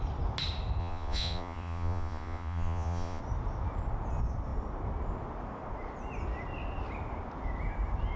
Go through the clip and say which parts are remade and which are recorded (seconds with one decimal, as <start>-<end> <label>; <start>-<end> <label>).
0.0-0.8 recorded; 0.8-3.2 remade; 3.2-8.2 recorded

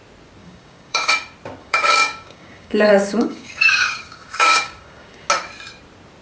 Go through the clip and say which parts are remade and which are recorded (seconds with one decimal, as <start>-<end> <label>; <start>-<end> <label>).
0.0-0.4 recorded; 0.4-1.1 remade; 1.1-1.6 recorded; 1.6-5.3 remade; 5.3-6.2 recorded

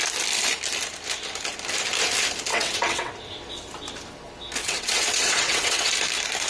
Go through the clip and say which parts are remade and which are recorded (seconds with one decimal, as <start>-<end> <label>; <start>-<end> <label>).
0.0-2.5 recorded; 2.5-3.1 remade; 3.1-4.6 recorded; 4.6-5.9 remade; 5.9-6.5 recorded

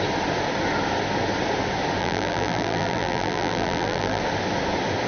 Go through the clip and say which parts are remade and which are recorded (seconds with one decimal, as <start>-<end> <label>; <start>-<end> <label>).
0.0-2.0 recorded; 2.0-4.2 remade; 4.2-5.1 recorded

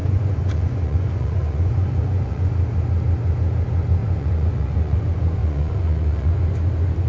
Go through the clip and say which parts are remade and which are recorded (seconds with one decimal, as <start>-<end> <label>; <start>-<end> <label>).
0.0-2.5 remade; 2.5-4.0 recorded; 4.0-5.0 remade; 5.0-5.4 recorded; 5.4-6.3 remade; 6.3-7.1 recorded